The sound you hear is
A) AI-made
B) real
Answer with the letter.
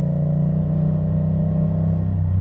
B